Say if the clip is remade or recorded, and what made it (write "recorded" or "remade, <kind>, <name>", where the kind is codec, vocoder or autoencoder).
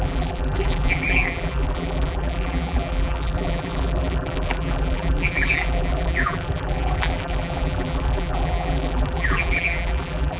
remade, vocoder, BigVGAN v2